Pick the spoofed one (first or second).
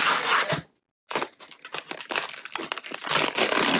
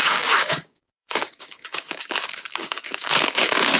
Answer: second